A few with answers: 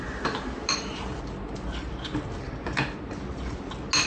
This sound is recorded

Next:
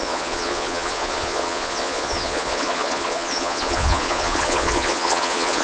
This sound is remade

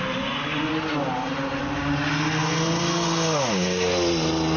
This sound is recorded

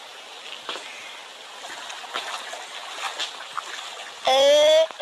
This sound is recorded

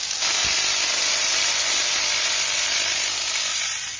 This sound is remade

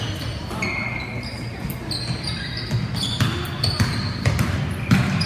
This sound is recorded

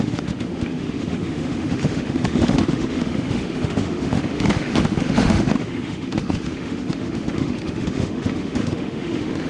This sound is remade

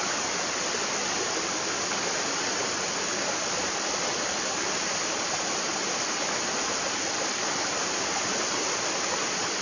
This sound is recorded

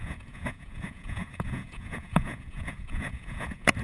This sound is remade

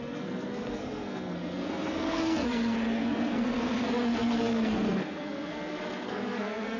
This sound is remade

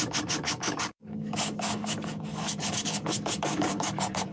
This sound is remade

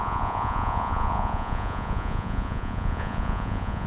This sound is remade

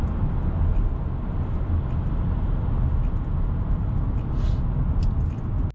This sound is recorded